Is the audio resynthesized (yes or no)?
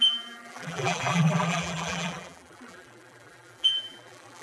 yes